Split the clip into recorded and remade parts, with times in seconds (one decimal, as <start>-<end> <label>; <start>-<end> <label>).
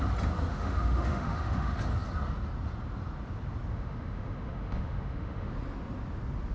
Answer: 0.0-0.5 recorded; 0.5-1.8 remade; 1.8-3.7 recorded; 3.7-5.5 remade; 5.5-6.5 recorded